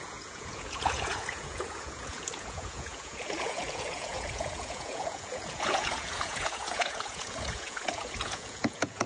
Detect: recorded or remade remade